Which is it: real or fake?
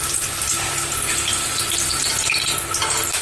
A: real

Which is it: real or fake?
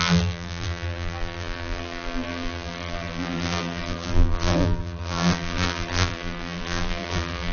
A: fake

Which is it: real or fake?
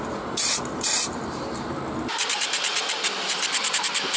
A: fake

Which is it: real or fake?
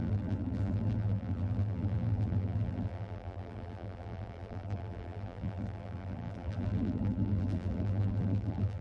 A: fake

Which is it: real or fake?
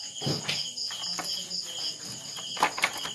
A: real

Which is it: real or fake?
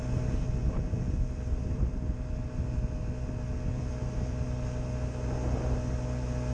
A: real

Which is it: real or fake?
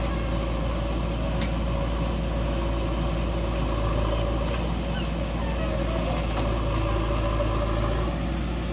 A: real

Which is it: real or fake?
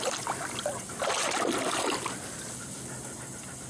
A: real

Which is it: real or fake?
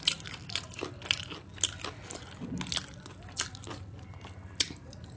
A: real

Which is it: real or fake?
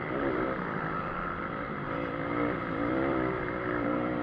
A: fake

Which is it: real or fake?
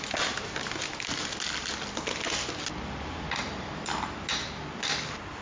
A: real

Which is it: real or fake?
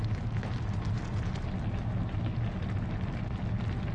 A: real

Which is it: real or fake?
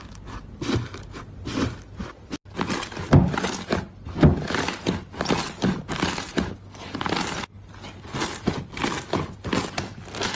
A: real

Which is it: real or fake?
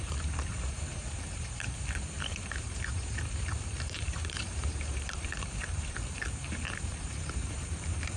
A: fake